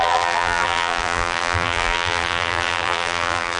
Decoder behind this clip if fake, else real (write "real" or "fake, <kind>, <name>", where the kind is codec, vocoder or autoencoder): fake, vocoder, BigVGAN v2